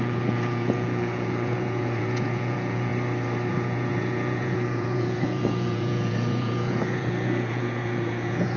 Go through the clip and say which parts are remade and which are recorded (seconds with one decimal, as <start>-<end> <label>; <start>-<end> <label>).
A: 0.0-2.9 remade; 2.9-3.5 recorded; 3.5-8.6 remade